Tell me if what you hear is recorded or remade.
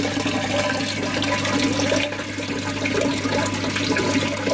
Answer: recorded